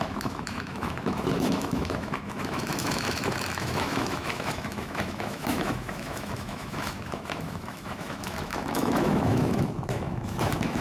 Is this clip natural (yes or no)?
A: no